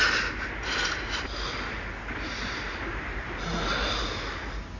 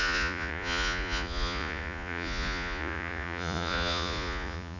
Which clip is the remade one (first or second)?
second